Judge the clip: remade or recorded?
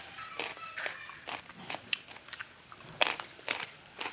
recorded